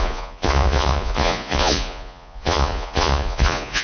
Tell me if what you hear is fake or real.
fake